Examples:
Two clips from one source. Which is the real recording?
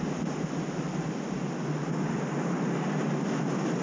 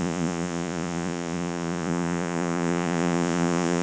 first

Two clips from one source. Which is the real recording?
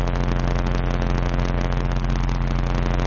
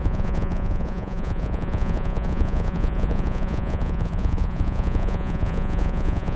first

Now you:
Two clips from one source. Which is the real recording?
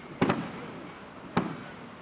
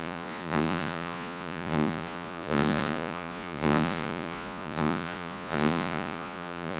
first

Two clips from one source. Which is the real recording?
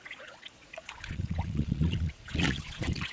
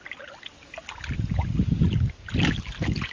second